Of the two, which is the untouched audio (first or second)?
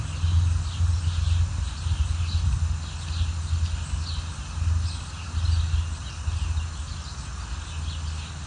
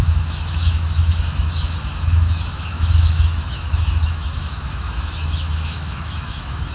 first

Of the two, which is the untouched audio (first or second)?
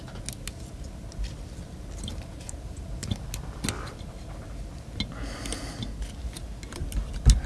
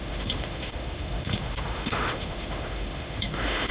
first